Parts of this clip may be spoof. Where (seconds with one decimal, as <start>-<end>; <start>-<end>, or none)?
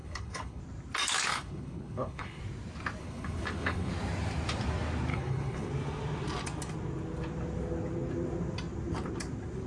0.0-0.6; 1.3-2.4; 3.0-3.9; 5.1-5.7